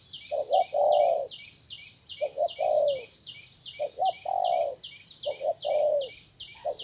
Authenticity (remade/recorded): recorded